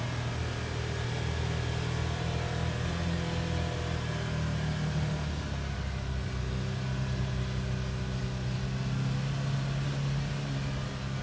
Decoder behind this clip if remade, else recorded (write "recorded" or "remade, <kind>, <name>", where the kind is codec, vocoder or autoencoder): recorded